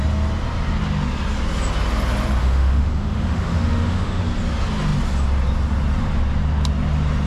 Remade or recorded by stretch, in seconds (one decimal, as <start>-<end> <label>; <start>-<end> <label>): 0.0-2.4 recorded; 2.4-4.2 remade; 4.2-7.3 recorded